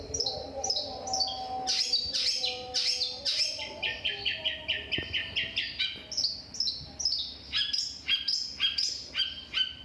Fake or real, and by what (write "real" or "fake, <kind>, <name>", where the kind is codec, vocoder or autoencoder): real